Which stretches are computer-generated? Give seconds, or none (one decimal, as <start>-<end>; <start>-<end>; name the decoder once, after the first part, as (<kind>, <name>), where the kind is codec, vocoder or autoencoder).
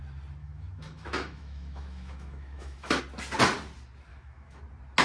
0.4-3.0 (autoencoder, DAC-VAE); 4.1-4.6